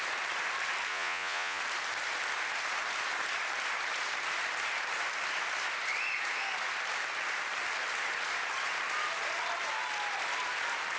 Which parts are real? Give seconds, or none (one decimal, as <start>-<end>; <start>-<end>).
0.0-0.9; 1.6-11.0